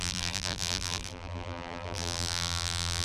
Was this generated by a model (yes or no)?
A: yes